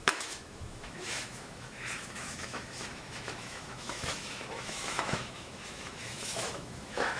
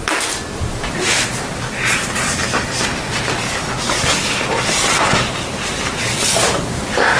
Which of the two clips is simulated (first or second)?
first